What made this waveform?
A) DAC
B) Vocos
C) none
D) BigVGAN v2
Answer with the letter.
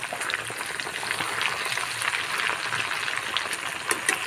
C